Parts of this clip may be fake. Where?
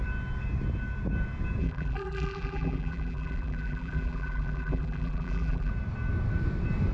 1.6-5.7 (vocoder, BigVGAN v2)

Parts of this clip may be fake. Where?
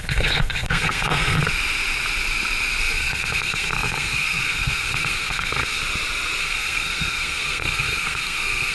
0.0-1.4 (codec, SNAC); 2.8-5.8; 6.4-8.7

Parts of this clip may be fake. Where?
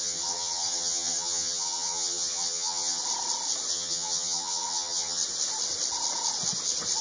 0.0-3.0 (vocoder, HiFi-GAN); 3.7-5.2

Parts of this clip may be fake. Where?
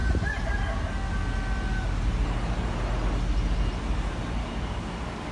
4.4-5.3 (codec, DAC)